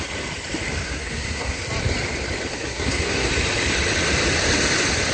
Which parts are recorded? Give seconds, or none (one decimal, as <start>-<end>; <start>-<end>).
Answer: 0.0-0.8; 1.6-2.5; 3.3-5.1